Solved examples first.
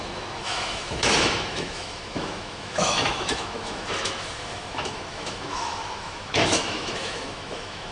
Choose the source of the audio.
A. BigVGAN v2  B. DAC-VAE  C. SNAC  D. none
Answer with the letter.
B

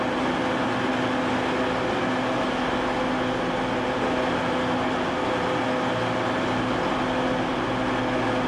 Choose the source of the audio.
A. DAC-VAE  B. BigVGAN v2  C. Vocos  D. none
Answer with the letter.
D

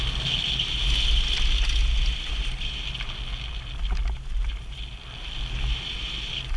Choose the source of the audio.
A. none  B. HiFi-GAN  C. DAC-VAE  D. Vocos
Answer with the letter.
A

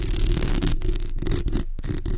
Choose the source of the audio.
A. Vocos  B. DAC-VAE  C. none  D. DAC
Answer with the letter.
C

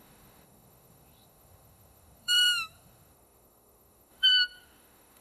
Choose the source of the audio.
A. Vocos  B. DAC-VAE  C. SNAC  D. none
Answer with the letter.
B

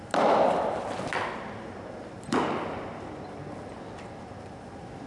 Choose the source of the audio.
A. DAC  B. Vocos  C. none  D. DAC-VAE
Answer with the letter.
C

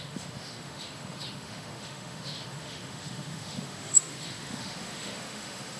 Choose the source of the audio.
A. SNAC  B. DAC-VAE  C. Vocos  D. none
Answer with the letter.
B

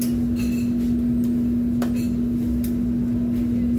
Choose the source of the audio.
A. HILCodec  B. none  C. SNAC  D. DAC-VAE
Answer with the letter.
B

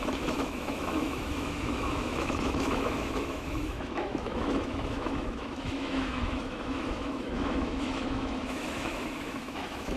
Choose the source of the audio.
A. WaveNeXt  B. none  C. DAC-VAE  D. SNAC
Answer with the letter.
C